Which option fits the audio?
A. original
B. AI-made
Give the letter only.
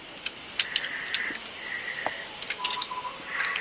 A